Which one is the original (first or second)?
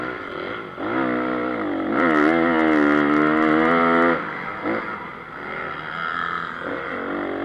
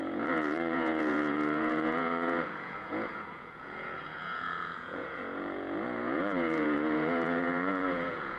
first